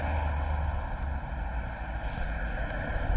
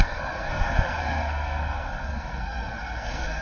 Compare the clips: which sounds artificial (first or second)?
second